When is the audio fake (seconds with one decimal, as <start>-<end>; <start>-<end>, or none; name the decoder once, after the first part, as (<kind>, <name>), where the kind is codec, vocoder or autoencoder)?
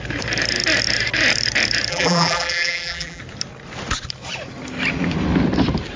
1.9-3.2 (vocoder, BigVGAN v2)